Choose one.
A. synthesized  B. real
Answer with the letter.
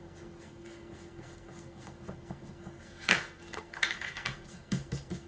A